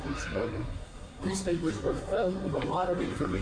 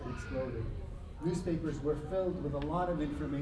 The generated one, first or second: first